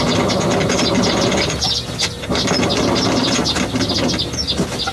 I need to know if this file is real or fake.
real